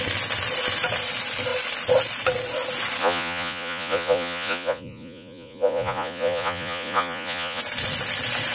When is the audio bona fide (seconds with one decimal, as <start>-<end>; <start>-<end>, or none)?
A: 0.0-3.0; 7.6-8.5